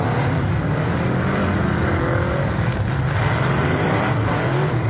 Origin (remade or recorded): remade